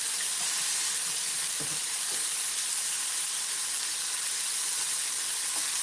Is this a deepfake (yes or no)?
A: no